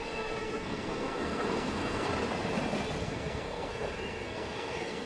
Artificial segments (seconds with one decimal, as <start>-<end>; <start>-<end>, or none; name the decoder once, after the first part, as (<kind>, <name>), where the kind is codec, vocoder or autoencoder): 0.0-2.1 (codec, SNAC); 3.0-5.1